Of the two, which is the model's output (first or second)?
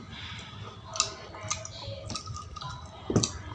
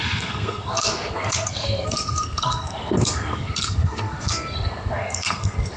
second